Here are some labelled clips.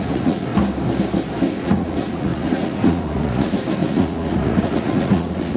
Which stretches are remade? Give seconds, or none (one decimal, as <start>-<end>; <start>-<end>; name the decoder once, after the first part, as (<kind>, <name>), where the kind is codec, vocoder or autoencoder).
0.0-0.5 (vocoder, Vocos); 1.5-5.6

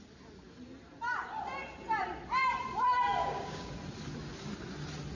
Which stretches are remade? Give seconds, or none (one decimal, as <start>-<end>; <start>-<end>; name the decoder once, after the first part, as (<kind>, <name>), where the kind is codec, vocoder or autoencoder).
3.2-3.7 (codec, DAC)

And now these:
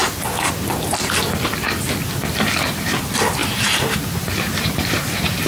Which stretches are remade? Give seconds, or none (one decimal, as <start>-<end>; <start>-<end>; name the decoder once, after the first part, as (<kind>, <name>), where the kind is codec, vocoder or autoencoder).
3.4-5.5 (vocoder, BigVGAN v2)

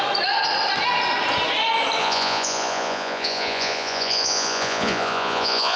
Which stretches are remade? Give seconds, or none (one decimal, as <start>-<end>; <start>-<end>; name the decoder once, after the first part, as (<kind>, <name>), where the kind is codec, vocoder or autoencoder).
2.0-5.8 (vocoder, Vocos)

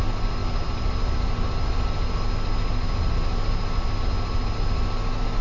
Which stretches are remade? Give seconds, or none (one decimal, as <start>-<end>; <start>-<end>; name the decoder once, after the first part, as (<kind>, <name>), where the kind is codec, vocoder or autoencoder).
none

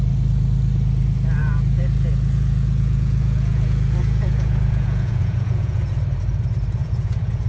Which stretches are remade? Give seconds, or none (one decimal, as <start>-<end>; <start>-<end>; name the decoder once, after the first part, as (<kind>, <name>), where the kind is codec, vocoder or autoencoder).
1.4-5.9 (vocoder, Vocos); 6.8-7.5